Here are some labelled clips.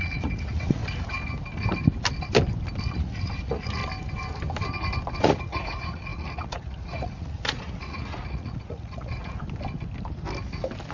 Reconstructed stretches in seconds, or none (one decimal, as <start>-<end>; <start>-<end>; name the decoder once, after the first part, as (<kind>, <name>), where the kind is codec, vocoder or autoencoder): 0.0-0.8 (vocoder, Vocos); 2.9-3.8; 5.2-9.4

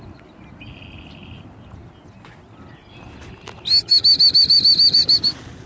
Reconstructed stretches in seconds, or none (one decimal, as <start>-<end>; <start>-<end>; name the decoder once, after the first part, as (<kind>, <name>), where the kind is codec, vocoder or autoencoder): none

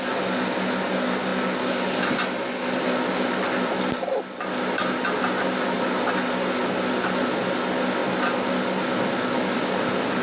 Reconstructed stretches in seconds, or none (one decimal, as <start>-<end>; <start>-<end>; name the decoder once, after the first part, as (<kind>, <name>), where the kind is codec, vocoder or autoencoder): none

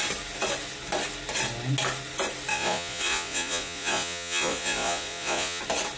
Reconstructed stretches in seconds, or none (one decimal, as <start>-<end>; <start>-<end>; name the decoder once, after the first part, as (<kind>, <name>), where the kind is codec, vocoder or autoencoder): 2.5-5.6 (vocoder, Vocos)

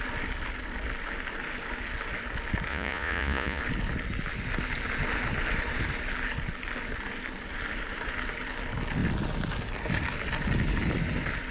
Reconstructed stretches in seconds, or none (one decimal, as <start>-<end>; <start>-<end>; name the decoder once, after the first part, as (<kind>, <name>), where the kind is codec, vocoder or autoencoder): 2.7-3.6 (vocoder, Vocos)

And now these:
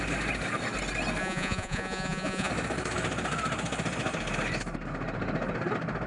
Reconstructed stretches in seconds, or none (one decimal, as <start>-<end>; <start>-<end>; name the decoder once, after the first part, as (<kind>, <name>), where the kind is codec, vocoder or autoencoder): 1.2-2.5 (vocoder, Vocos)

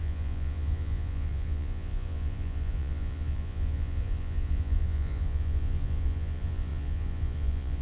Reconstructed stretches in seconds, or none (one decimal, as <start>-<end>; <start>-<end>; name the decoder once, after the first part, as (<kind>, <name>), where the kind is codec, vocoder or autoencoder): 0.0-7.8 (vocoder, Vocos)

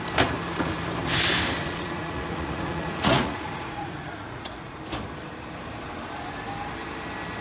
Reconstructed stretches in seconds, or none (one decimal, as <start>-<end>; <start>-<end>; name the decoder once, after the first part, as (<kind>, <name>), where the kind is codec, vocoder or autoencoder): 1.6-4.8 (vocoder, Vocos)